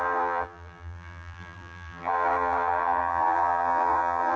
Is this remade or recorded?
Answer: remade